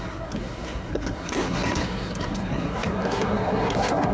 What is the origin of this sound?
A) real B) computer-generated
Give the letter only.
B